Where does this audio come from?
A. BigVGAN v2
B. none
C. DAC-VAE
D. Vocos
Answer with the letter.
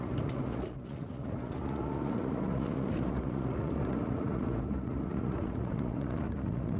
D